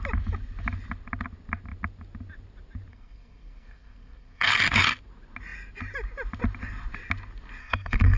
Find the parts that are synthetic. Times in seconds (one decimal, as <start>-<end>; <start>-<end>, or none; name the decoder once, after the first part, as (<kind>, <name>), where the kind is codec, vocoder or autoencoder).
2.9-4.6 (codec, SNAC); 7.6-8.2